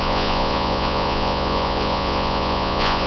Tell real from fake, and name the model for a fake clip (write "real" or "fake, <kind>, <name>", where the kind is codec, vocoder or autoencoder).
fake, vocoder, Vocos